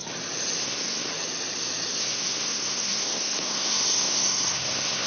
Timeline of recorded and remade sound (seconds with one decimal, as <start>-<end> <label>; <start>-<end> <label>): 0.0-0.6 recorded; 0.6-1.1 remade; 1.1-2.0 recorded; 2.0-5.1 remade